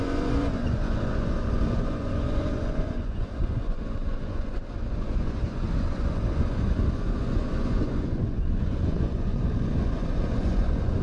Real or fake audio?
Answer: fake